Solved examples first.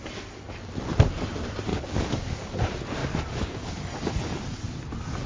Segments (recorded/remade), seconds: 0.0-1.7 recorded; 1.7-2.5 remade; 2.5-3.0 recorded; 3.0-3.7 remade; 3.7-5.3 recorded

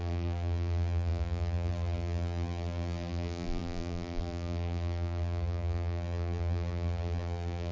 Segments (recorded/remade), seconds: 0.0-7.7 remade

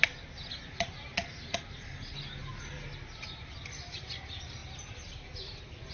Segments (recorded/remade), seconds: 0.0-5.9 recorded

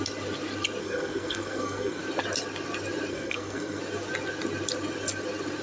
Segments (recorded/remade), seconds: 0.0-0.8 recorded; 0.8-2.0 remade; 2.0-3.1 recorded; 3.1-3.8 remade; 3.8-5.6 recorded